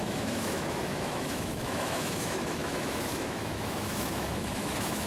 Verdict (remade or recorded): remade